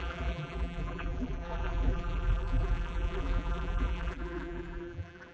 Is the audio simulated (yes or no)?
yes